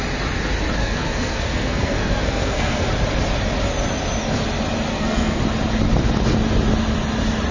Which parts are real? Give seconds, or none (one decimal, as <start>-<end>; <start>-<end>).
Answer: 0.0-0.8; 2.9-4.9; 5.4-7.5